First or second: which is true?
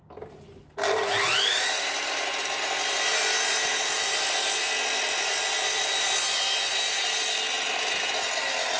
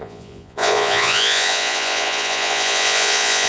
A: first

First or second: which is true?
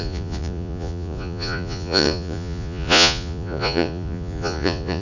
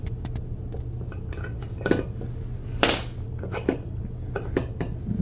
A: second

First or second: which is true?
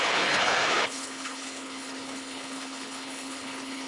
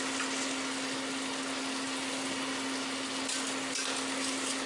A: second